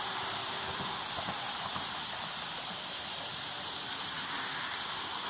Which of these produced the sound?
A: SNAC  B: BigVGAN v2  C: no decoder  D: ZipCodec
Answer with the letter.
C